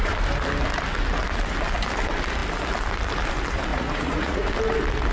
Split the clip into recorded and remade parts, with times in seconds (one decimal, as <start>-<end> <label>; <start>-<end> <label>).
0.0-3.7 recorded; 3.7-4.5 remade; 4.5-5.1 recorded